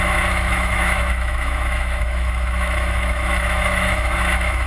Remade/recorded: remade